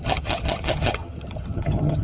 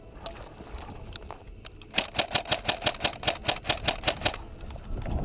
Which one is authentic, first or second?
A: second